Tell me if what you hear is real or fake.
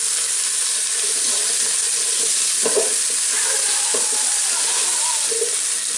real